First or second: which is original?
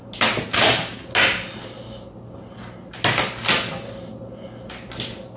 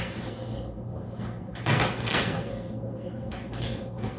first